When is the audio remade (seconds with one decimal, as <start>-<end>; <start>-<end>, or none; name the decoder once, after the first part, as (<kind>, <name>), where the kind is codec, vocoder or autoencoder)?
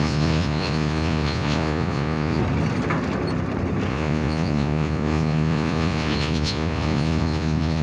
0.0-2.4 (vocoder, Vocos); 3.9-7.8